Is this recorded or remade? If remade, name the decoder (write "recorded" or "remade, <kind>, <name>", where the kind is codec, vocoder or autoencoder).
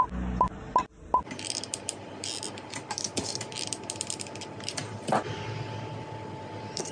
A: recorded